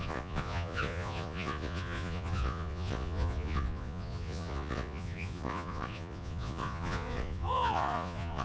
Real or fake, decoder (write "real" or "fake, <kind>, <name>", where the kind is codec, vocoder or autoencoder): fake, vocoder, Vocos